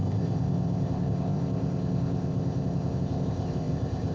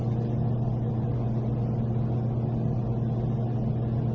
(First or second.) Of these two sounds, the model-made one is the first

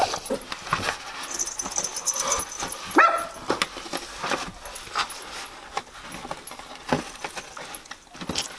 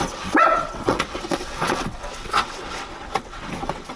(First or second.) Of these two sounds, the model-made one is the second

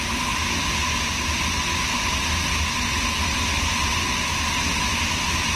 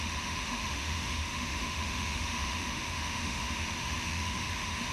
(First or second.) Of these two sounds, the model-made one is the second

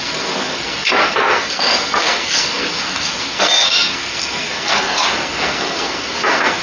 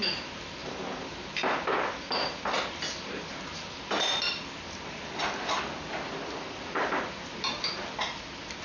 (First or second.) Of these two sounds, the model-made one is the first